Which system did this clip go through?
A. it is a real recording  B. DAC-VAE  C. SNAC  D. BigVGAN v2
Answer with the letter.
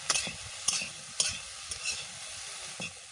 A